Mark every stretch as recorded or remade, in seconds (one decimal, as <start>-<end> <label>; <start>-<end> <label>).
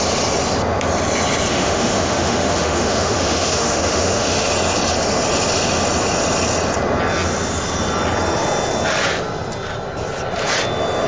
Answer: 0.0-1.5 recorded; 1.5-4.5 remade; 4.5-11.1 recorded